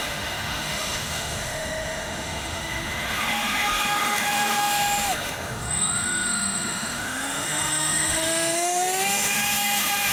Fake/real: fake